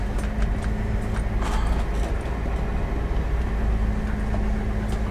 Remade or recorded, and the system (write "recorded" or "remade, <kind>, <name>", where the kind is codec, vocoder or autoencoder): recorded